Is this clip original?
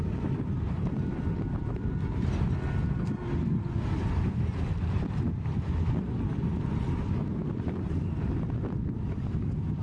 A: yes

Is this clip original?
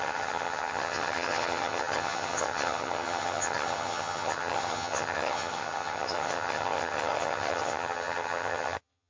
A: no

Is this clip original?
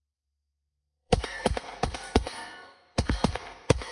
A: no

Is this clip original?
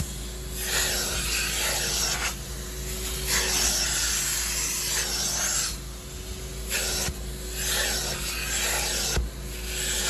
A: yes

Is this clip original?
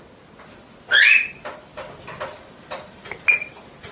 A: yes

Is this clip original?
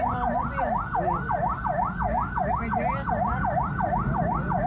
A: yes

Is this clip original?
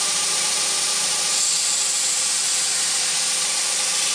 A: yes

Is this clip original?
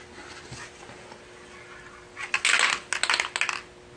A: yes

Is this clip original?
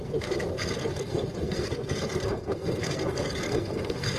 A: no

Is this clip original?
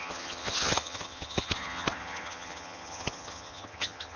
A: no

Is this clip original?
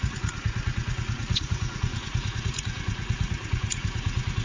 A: no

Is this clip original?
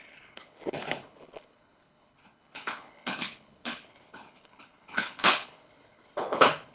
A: no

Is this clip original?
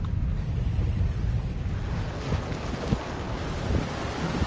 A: yes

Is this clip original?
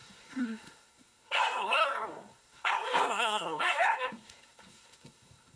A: no